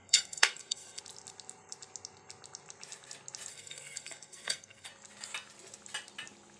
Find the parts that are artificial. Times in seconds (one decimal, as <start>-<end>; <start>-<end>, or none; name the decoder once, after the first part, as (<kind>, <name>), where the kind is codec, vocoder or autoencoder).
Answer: 0.0-1.0 (codec, SNAC); 3.5-4.9